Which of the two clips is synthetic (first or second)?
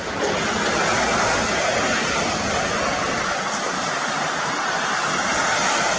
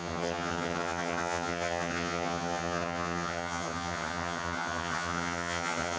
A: second